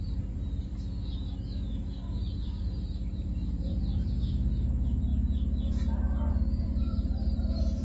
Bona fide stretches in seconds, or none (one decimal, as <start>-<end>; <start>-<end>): 0.7-2.4; 5.1-6.3